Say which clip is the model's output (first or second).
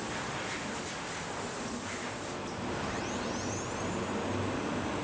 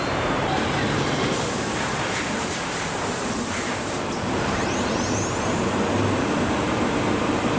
second